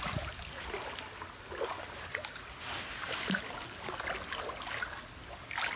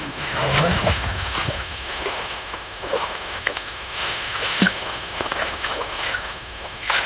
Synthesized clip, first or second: second